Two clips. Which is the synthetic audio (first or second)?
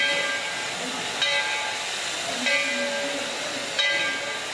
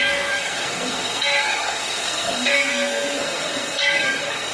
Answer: second